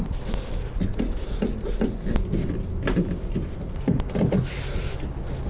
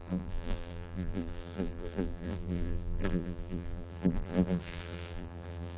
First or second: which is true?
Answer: first